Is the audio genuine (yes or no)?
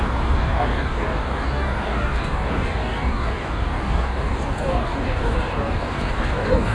no